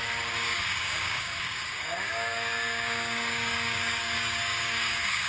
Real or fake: fake